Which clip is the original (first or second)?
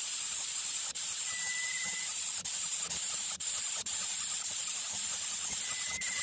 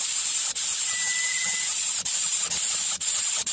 second